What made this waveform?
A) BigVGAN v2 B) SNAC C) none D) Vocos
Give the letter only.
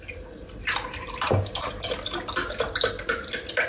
C